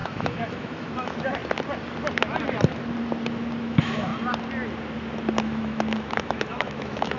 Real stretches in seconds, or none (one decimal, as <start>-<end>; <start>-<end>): 1.4-3.6; 4.1-5.4